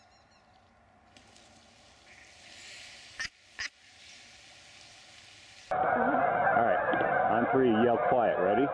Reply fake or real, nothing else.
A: real